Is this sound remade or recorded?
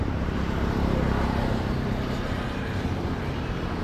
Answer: remade